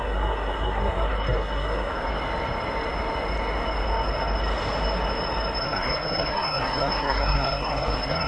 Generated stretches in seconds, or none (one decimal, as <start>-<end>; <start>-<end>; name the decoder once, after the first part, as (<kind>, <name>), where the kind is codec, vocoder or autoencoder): 0.0-1.9 (codec, SNAC); 5.6-8.3